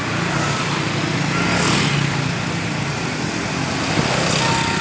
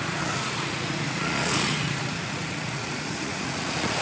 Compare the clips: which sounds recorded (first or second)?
first